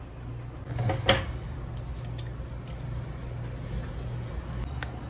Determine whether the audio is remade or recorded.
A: recorded